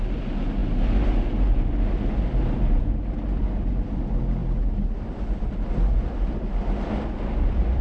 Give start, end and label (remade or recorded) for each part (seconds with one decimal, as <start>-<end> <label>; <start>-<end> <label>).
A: 0.0-7.8 recorded